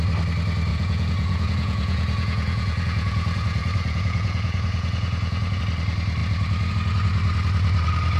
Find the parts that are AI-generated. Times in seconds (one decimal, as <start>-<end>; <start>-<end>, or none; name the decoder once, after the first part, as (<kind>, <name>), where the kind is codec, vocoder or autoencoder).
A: 0.7-5.6 (vocoder, Vocos)